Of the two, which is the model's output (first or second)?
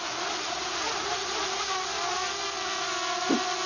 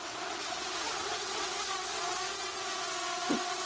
second